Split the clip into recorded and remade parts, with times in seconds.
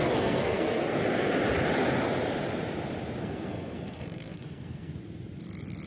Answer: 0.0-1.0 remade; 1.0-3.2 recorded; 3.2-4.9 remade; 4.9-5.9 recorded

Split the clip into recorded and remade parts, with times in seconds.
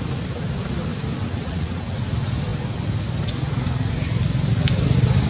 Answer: 0.0-1.2 recorded; 1.2-2.0 remade; 2.0-5.3 recorded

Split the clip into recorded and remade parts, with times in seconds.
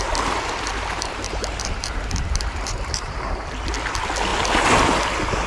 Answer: 0.0-0.7 recorded; 0.7-3.3 remade; 3.3-5.5 recorded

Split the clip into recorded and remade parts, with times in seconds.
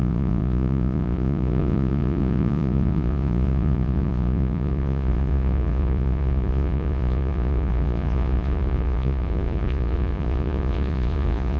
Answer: 0.0-11.6 remade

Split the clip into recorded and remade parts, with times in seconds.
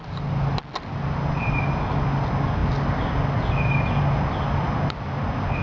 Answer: 0.0-5.6 recorded